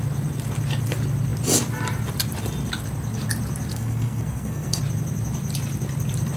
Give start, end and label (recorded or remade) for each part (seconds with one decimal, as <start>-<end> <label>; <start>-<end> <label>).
0.0-3.7 recorded; 3.7-4.8 remade; 4.8-6.4 recorded